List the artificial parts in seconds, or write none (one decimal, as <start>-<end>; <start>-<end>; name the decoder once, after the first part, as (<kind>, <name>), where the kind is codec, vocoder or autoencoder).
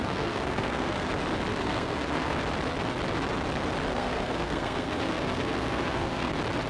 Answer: 0.0-1.1 (codec, SNAC); 1.5-2.4; 3.9-6.3